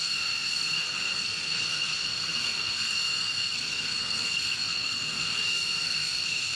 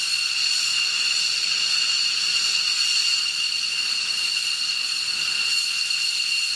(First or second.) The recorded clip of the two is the second